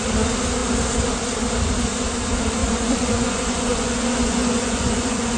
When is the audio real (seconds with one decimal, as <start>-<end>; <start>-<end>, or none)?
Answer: 0.0-2.6